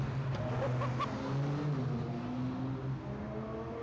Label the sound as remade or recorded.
recorded